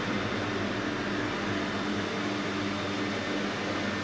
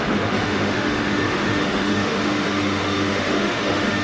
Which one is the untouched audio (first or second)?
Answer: first